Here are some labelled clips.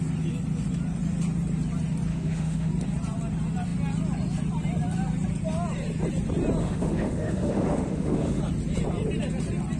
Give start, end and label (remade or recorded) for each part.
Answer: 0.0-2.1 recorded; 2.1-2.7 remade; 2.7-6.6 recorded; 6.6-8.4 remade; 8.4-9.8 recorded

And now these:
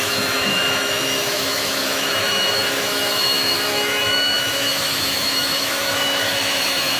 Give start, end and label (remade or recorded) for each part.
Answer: 0.0-7.0 remade

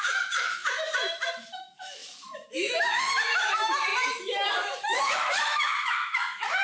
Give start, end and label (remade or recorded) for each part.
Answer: 0.0-6.6 remade

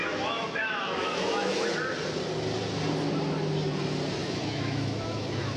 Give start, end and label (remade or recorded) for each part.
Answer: 0.0-1.7 remade; 1.7-4.2 recorded; 4.2-5.6 remade